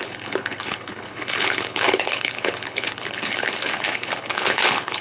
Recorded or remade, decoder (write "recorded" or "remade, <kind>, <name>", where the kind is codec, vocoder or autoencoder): remade, codec, HILCodec